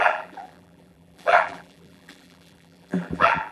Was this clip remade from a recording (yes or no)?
yes